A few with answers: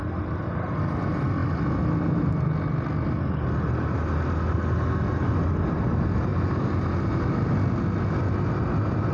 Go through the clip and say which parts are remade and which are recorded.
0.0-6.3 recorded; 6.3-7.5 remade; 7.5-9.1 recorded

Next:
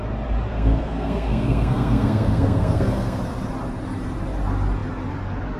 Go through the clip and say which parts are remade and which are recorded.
0.0-0.5 recorded; 0.5-3.2 remade; 3.2-5.6 recorded

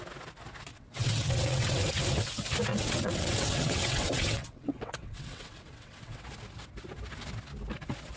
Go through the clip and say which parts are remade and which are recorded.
0.0-0.7 recorded; 0.7-1.9 remade; 1.9-2.7 recorded; 2.7-6.2 remade; 6.2-8.2 recorded

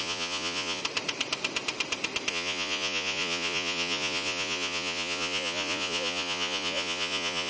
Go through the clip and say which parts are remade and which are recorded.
0.0-0.8 remade; 0.8-2.3 recorded; 2.3-7.5 remade

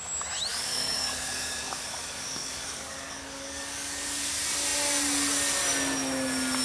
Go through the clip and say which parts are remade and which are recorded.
0.0-0.5 recorded; 0.5-4.3 remade; 4.3-6.6 recorded

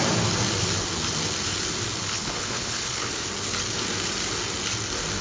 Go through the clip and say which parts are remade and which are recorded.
0.0-2.0 recorded; 2.0-3.1 remade; 3.1-5.2 recorded

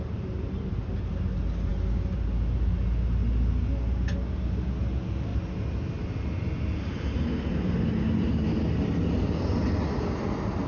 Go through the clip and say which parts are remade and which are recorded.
0.0-10.7 recorded

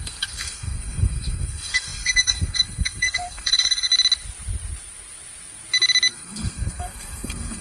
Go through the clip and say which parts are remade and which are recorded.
0.0-3.9 remade; 3.9-6.1 recorded; 6.1-7.6 remade